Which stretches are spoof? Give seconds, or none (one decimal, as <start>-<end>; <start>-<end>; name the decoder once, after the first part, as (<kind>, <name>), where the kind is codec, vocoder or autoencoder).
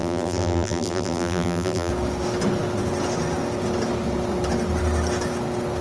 0.0-1.9 (vocoder, BigVGAN v2)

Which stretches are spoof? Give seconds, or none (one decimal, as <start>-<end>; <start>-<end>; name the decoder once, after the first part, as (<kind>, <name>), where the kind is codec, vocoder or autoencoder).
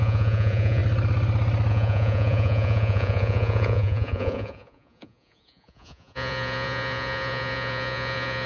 0.0-0.8 (vocoder, Vocos); 1.7-8.5